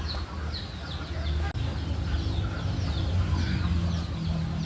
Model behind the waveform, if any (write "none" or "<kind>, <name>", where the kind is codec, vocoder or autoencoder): none